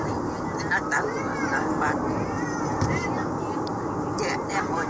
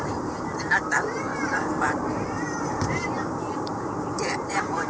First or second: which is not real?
second